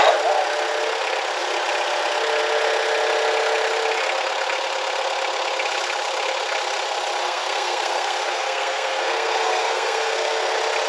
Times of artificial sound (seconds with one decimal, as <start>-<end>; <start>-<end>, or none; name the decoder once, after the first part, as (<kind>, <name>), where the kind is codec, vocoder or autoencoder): 7.2-10.5 (codec, SNAC)

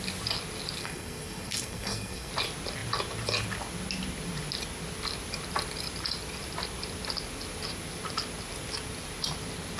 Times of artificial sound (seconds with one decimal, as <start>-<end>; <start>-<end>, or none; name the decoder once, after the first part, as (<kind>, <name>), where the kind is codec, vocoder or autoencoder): 0.8-2.3 (codec, SNAC)

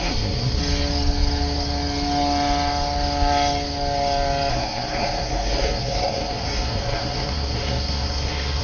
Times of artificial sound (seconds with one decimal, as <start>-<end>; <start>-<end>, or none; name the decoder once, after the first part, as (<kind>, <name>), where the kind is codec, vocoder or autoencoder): 0.0-0.6 (codec, SNAC); 4.5-8.6